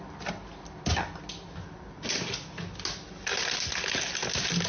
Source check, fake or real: real